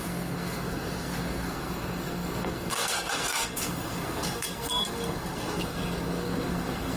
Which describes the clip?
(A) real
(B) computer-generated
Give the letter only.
B